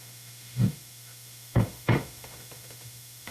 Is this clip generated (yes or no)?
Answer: yes